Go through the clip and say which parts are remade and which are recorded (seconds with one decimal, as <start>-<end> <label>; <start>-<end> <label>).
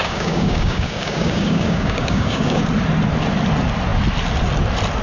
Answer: 0.0-2.6 remade; 2.6-5.0 recorded